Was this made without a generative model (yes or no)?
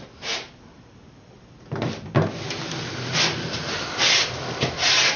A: yes